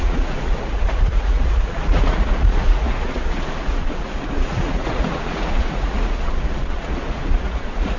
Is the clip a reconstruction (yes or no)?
yes